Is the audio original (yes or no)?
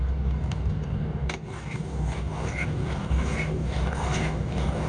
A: no